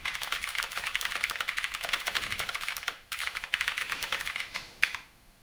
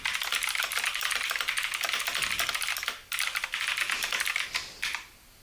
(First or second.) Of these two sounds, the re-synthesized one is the first